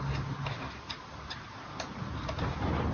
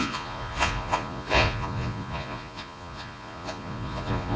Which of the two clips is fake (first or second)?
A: second